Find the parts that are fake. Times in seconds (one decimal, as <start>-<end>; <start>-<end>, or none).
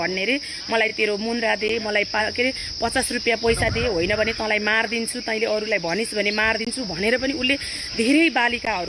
none